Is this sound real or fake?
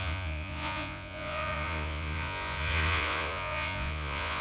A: fake